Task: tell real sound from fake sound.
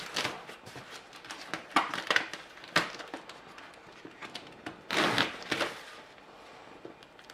real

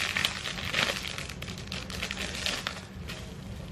real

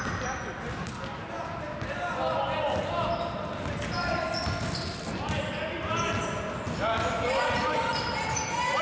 real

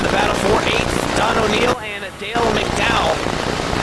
real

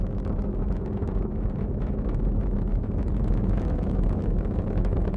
fake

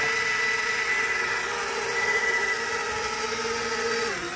real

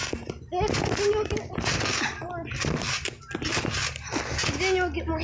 real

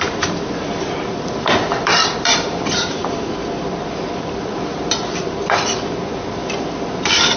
fake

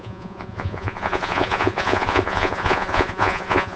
fake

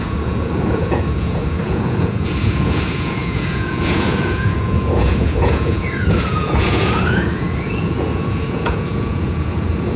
fake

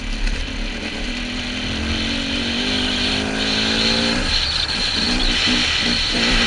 real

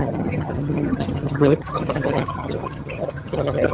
fake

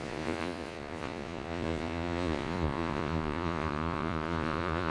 fake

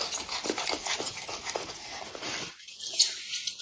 real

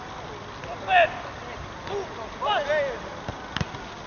real